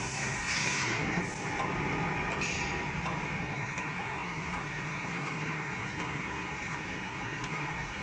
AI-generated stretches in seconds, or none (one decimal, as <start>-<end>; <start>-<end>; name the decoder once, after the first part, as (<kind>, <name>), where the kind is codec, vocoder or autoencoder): 0.0-1.2 (codec, SNAC); 3.4-8.0